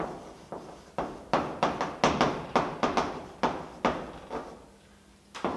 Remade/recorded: recorded